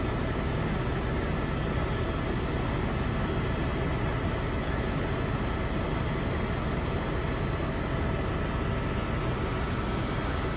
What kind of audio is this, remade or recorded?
recorded